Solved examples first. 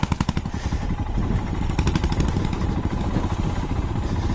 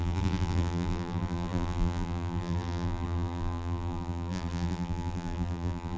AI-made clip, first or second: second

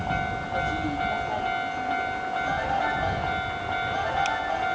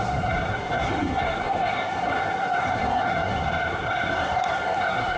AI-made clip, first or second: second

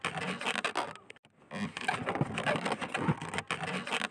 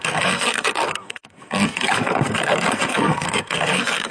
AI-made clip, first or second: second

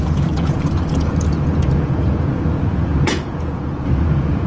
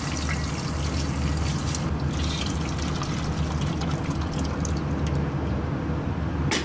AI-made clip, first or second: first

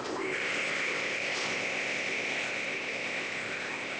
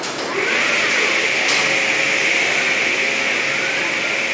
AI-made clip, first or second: first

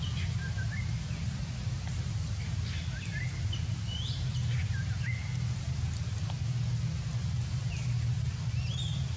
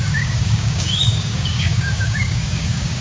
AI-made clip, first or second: second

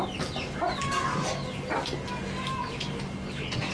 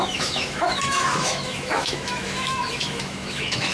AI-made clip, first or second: second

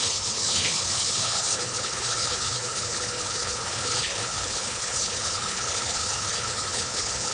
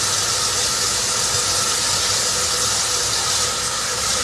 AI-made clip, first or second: first